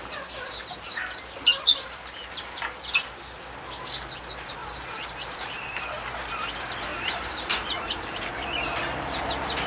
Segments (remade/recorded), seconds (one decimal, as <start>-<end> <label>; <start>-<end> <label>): 0.0-4.6 recorded; 4.6-6.3 remade; 6.3-6.9 recorded; 6.9-8.3 remade; 8.3-9.7 recorded

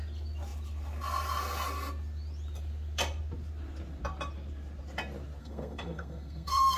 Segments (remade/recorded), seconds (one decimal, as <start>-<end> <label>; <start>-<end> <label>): 0.0-5.4 recorded; 5.4-6.8 remade

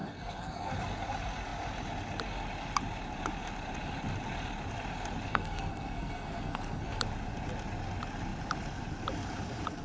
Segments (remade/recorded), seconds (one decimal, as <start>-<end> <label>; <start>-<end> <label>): 0.0-0.7 remade; 0.7-5.3 recorded; 5.3-7.0 remade; 7.0-9.8 recorded

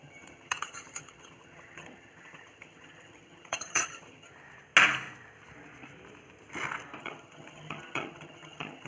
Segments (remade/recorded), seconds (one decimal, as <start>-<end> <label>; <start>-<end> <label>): 0.0-4.3 remade; 4.3-7.0 recorded; 7.0-8.9 remade

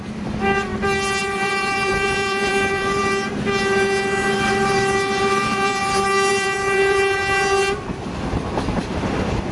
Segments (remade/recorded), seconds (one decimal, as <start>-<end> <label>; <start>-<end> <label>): 0.0-0.7 remade; 0.7-1.2 recorded; 1.2-3.0 remade; 3.0-5.2 recorded; 5.2-5.8 remade; 5.8-6.3 recorded; 6.3-7.2 remade; 7.2-8.1 recorded; 8.1-9.5 remade

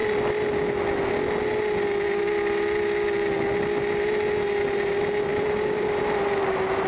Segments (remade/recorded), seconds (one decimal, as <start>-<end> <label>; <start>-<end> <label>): 0.0-5.3 recorded; 5.3-6.0 remade; 6.0-6.9 recorded